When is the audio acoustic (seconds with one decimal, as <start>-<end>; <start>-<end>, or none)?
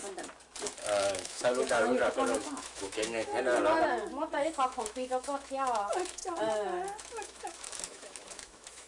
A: 0.0-0.8; 3.3-3.9; 6.2-7.0